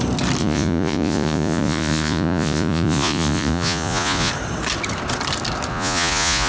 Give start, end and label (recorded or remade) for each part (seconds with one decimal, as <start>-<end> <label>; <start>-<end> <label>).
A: 0.0-0.4 recorded; 0.4-4.3 remade; 4.3-5.7 recorded; 5.7-6.5 remade